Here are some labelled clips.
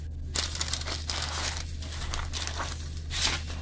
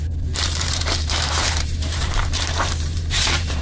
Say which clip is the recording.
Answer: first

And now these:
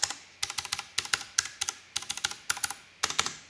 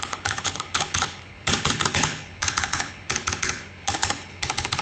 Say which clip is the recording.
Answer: first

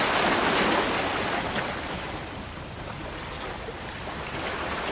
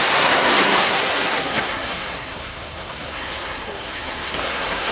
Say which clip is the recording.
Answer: first